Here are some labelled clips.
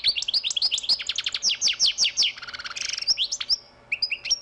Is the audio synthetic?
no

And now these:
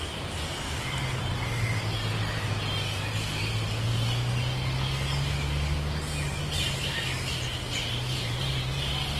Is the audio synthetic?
no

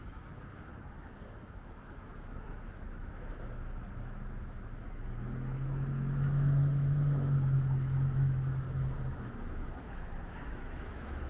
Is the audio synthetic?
yes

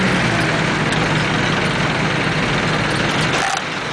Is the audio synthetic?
no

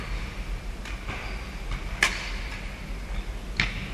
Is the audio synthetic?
no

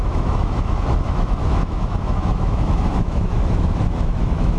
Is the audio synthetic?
yes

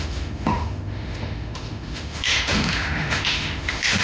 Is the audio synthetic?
yes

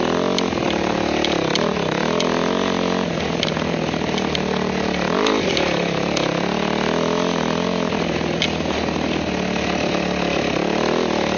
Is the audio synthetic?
no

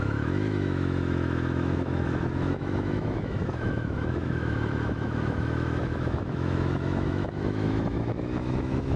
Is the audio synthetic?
yes